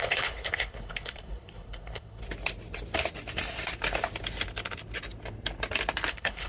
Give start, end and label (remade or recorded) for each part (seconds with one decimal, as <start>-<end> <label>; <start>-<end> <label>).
0.0-2.2 remade; 2.2-6.1 recorded; 6.1-6.5 remade